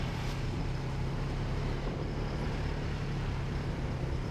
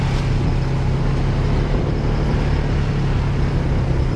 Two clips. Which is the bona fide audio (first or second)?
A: second